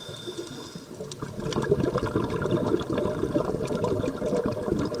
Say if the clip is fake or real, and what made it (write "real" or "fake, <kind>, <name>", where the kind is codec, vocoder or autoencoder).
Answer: real